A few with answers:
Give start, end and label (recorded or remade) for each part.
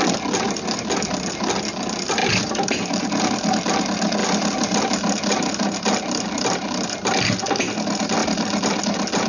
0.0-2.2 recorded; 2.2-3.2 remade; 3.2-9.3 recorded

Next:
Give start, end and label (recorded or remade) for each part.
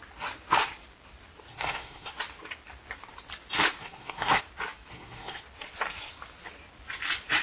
0.0-1.5 recorded; 1.5-2.1 remade; 2.1-3.8 recorded; 3.8-4.4 remade; 4.4-4.9 recorded; 4.9-5.4 remade; 5.4-7.4 recorded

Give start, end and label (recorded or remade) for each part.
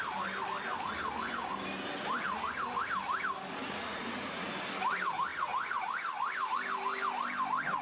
0.0-3.6 recorded; 3.6-4.5 remade; 4.5-5.3 recorded; 5.3-6.5 remade; 6.5-7.8 recorded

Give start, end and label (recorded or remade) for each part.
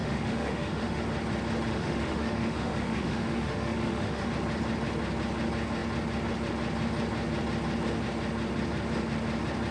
0.0-1.0 remade; 1.0-1.7 recorded; 1.7-4.3 remade; 4.3-9.7 recorded